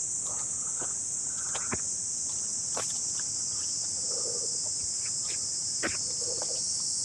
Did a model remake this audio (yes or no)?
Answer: no